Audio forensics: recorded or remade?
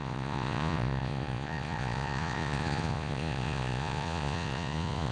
remade